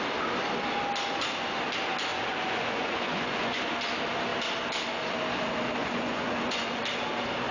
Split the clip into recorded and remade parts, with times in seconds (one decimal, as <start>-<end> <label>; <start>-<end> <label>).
0.0-2.1 recorded; 2.1-3.6 remade; 3.6-5.8 recorded; 5.8-6.8 remade; 6.8-7.5 recorded